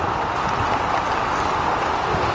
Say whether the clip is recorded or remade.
recorded